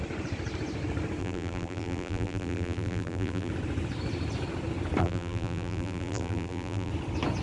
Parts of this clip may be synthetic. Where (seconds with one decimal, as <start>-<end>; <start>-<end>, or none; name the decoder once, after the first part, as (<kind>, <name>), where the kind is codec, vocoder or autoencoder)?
1.2-3.5 (vocoder, BigVGAN v2); 5.0-6.9